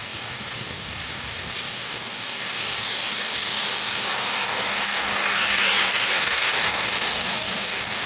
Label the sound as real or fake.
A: fake